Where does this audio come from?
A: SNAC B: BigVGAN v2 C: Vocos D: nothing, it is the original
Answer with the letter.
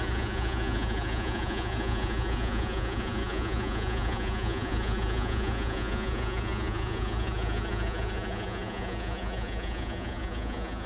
C